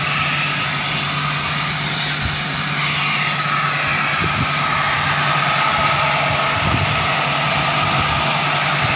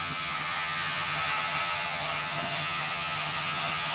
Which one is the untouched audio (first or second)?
first